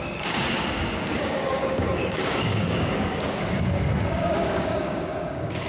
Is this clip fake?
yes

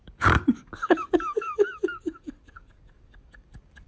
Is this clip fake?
yes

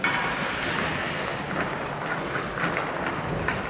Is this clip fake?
no